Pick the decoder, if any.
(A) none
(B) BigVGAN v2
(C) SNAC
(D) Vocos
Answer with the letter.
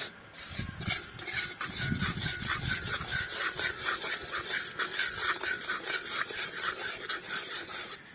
A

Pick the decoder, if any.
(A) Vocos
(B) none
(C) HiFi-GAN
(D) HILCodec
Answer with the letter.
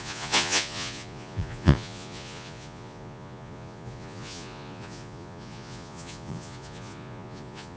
A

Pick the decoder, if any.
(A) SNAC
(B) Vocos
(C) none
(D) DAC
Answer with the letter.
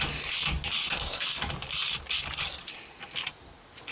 C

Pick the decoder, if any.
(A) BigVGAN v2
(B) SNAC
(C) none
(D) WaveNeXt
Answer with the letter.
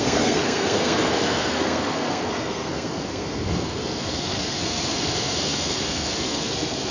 B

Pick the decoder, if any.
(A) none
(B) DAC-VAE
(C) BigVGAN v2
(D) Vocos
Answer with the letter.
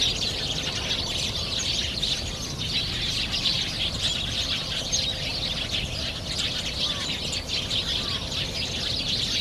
A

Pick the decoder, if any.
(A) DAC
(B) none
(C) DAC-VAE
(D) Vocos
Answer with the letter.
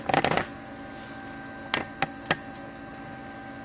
B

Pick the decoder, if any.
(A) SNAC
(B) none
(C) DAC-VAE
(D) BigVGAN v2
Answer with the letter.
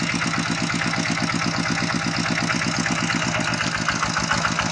B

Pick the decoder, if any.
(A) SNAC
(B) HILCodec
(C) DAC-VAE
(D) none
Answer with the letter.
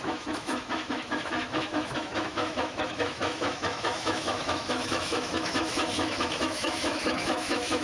C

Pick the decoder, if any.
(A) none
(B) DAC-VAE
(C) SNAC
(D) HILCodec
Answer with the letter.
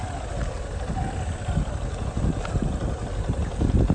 A